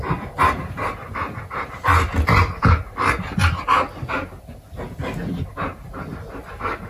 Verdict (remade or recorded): recorded